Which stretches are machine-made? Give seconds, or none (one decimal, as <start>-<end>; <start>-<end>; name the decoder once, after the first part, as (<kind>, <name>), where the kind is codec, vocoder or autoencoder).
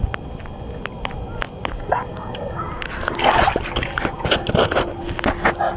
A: none